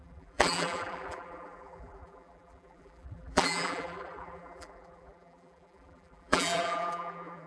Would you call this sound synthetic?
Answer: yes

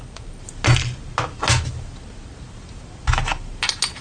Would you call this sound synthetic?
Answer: no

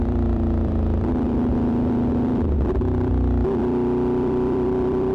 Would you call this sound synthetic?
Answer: yes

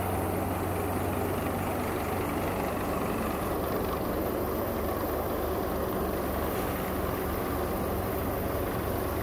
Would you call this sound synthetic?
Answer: no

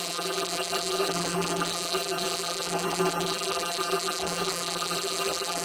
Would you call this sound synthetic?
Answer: yes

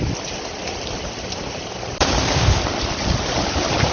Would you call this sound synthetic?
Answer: yes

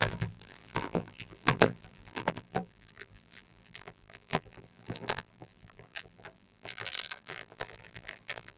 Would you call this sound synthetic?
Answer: yes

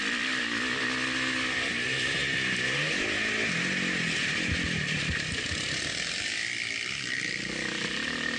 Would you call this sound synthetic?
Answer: no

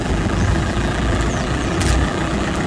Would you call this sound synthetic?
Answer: yes